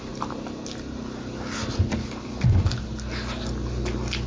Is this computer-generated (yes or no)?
no